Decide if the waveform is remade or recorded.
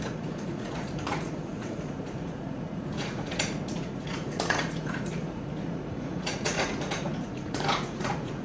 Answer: remade